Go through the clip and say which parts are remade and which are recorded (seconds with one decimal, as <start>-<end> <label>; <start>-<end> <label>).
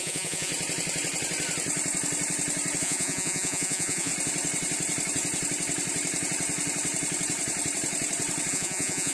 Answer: 0.0-0.5 remade; 0.5-2.8 recorded; 2.8-4.1 remade; 4.1-8.5 recorded; 8.5-9.1 remade